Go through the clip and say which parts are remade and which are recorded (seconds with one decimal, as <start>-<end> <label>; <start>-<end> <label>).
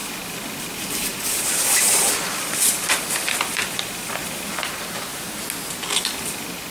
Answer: 0.0-6.7 recorded